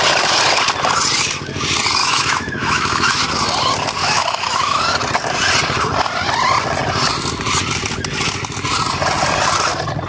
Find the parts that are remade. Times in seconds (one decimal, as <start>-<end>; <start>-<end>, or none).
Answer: 2.0-3.3; 4.0-4.8